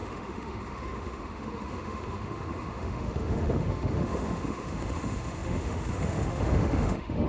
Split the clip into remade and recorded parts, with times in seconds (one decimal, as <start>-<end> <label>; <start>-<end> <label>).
0.0-7.3 remade